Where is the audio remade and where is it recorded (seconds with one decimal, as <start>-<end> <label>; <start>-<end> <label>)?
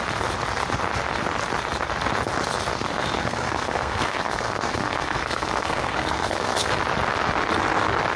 0.0-2.7 recorded; 2.7-6.8 remade; 6.8-8.2 recorded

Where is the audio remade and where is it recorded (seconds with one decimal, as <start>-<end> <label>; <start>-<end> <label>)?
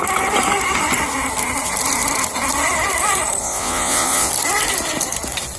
0.0-3.4 recorded; 3.4-4.3 remade; 4.3-5.6 recorded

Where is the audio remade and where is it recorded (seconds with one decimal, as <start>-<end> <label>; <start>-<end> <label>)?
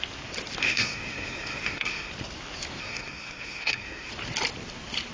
0.0-0.6 recorded; 0.6-2.1 remade; 2.1-2.8 recorded; 2.8-4.1 remade; 4.1-5.1 recorded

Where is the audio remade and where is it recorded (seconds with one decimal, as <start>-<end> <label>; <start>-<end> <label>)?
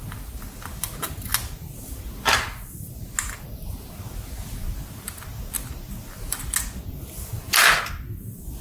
0.0-8.6 recorded